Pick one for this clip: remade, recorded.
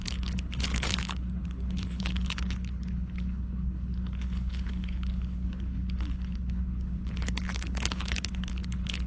remade